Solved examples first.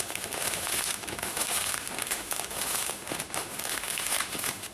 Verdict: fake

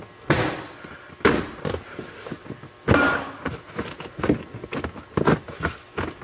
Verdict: real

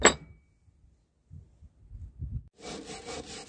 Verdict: real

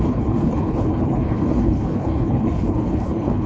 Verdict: fake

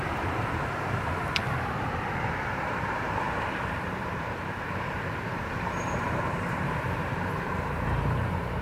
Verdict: fake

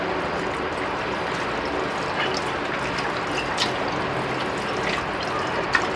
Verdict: real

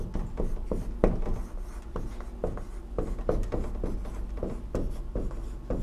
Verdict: real